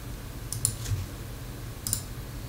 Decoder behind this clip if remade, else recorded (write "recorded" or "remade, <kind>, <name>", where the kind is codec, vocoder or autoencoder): recorded